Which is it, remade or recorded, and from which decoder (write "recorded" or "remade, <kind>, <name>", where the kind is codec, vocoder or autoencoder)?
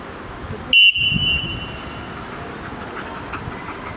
recorded